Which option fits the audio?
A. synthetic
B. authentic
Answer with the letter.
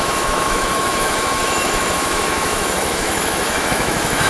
A